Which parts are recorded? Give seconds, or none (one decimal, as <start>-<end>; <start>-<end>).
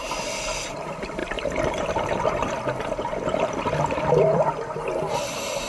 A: 0.0-0.7